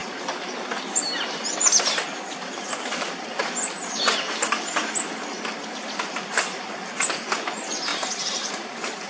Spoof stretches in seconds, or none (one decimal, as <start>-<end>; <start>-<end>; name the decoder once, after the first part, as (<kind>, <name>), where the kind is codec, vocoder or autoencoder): 7.9-9.1 (vocoder, BigVGAN v2)